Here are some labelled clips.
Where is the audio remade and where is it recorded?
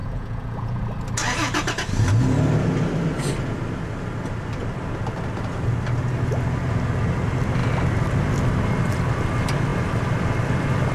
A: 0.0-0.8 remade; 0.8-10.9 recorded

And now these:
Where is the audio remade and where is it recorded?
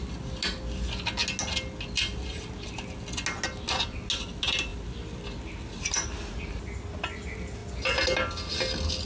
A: 0.0-9.1 recorded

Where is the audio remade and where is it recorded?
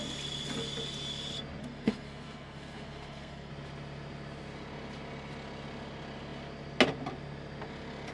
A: 0.0-1.6 recorded; 1.6-3.5 remade; 3.5-8.1 recorded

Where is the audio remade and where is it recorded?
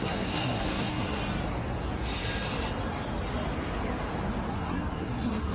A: 0.0-1.2 remade; 1.2-4.5 recorded; 4.5-5.5 remade